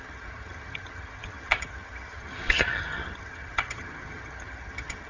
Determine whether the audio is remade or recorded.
remade